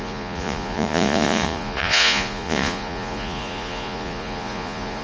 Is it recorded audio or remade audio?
remade